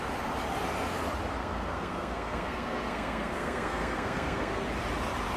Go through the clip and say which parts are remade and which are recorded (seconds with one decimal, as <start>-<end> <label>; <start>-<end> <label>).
0.0-1.4 recorded; 1.4-4.6 remade; 4.6-5.4 recorded